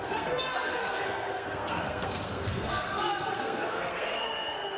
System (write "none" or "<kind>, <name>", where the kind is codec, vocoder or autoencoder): codec, SNAC